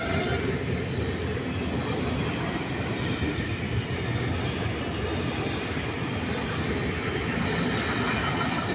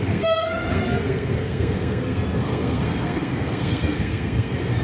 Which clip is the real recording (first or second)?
first